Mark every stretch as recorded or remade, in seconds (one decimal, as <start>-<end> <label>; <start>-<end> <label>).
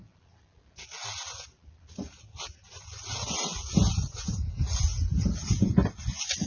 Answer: 0.0-6.5 recorded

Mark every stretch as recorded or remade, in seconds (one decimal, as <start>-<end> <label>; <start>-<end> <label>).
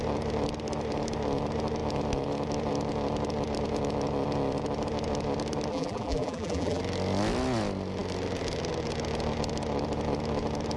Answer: 0.0-5.7 recorded; 5.7-6.8 remade; 6.8-10.8 recorded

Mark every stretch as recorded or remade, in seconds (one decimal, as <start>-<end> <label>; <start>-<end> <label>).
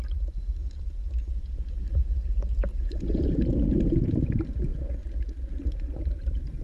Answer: 0.0-4.7 remade; 4.7-5.5 recorded; 5.5-6.6 remade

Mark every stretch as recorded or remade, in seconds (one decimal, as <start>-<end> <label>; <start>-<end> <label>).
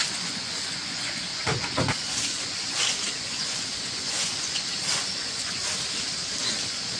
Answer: 0.0-5.6 remade; 5.6-6.4 recorded; 6.4-7.0 remade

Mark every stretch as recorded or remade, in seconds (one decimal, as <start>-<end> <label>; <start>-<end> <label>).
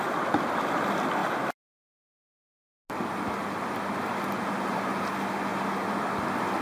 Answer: 0.0-6.6 recorded